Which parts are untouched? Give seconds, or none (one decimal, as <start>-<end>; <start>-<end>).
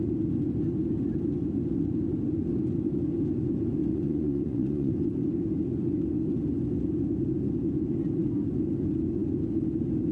0.0-3.8; 4.9-10.1